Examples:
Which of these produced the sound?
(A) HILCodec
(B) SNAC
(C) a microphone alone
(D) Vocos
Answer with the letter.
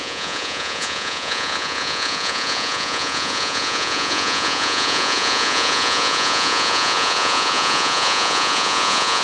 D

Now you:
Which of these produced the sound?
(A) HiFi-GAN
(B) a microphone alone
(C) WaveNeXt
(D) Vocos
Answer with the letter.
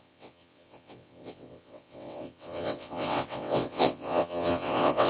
C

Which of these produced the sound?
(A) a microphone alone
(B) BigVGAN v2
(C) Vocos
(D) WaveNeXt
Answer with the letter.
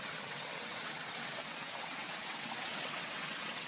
D